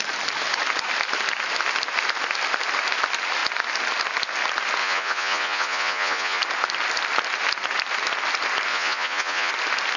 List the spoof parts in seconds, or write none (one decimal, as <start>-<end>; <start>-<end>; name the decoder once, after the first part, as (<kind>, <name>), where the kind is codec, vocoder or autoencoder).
4.8-6.4 (vocoder, Vocos); 8.7-9.5